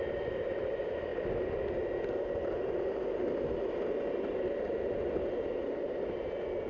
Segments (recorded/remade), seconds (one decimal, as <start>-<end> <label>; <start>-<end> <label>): 0.0-6.7 recorded